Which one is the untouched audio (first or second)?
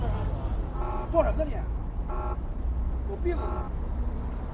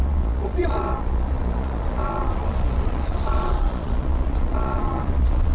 first